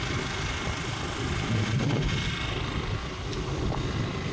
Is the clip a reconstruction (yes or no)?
no